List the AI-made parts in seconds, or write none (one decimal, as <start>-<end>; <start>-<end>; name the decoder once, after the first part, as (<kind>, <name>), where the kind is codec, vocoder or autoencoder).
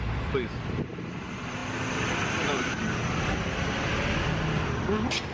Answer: none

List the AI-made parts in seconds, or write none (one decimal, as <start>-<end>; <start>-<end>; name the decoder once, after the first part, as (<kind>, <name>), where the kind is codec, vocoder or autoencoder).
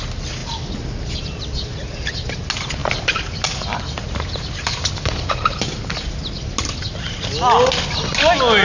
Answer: 2.8-6.1 (vocoder, BigVGAN v2)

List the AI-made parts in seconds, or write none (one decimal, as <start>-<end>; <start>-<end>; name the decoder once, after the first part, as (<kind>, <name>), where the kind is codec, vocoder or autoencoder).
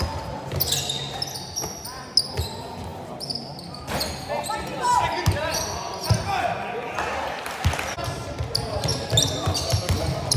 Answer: none